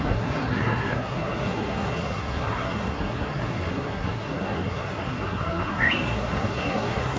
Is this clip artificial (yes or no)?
yes